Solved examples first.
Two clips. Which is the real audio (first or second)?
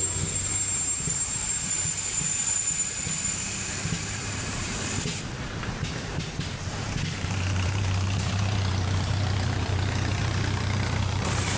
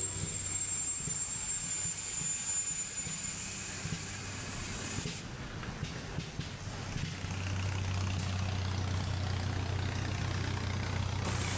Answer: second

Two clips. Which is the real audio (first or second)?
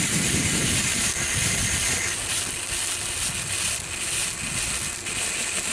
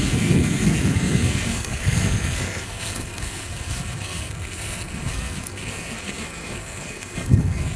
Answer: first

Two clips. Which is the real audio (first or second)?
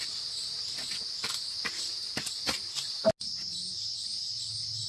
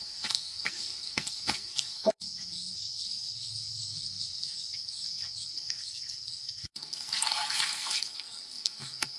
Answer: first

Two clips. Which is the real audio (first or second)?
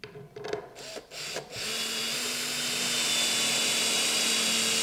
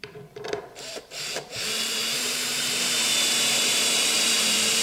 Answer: first